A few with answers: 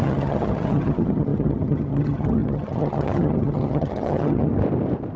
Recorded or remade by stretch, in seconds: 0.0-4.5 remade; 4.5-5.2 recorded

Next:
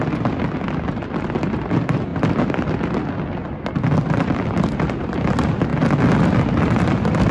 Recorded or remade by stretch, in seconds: 0.0-7.3 recorded

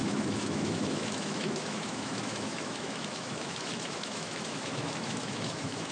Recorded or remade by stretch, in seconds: 0.0-5.9 remade

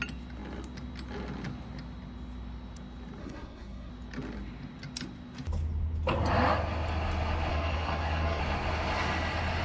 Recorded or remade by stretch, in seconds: 0.0-3.2 recorded; 3.2-3.9 remade; 3.9-7.5 recorded; 7.5-8.4 remade; 8.4-9.6 recorded

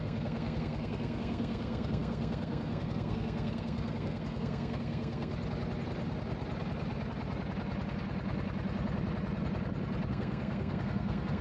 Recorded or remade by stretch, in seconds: 0.0-5.3 remade; 5.3-10.1 recorded; 10.1-11.4 remade

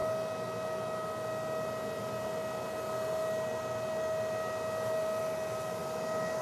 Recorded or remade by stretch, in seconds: 0.0-6.4 recorded